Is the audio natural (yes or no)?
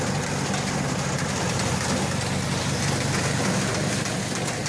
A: yes